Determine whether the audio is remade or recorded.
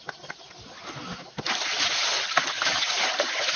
recorded